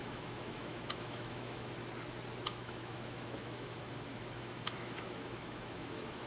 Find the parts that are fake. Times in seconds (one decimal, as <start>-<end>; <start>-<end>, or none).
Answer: 0.0-1.7; 2.5-6.3